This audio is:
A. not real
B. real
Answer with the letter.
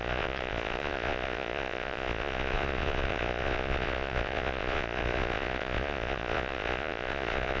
A